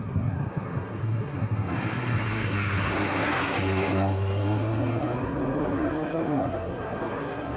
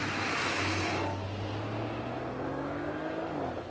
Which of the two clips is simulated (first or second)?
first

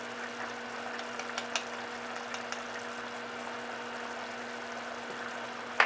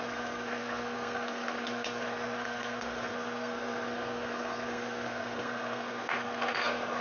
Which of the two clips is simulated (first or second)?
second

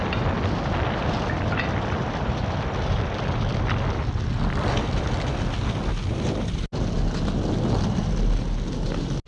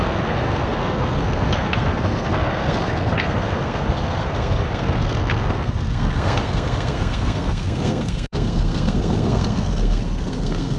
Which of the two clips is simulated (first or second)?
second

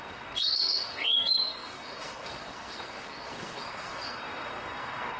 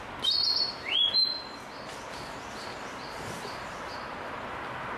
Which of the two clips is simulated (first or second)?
first